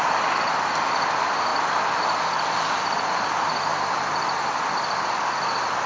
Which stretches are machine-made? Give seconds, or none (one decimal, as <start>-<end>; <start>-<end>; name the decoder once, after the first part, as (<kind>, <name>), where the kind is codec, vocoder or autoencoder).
none